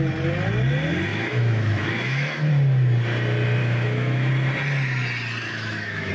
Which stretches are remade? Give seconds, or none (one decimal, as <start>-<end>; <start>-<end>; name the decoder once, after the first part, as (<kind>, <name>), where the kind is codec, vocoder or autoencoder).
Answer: 1.1-2.5 (autoencoder, DAC-VAE); 3.6-4.3; 5.4-6.1